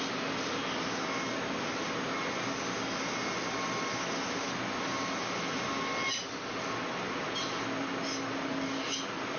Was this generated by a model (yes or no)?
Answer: no